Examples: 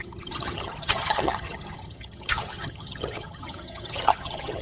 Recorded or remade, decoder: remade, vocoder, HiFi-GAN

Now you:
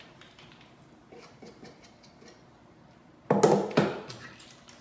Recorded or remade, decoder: recorded